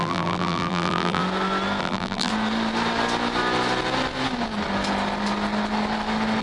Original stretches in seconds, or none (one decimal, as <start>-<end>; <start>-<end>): 1.2-1.8; 2.3-6.4